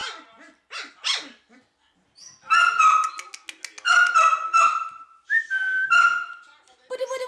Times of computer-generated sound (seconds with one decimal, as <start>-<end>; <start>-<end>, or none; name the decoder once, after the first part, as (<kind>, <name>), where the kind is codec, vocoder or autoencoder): none